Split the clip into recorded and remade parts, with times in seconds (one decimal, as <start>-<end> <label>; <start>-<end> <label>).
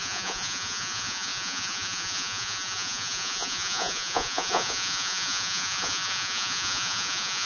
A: 0.0-7.5 remade